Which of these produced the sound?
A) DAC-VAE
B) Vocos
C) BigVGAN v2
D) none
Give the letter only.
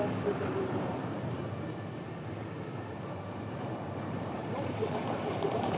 C